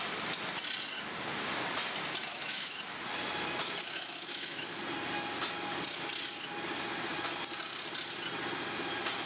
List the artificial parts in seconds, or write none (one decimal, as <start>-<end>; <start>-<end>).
2.3-2.8; 3.8-4.8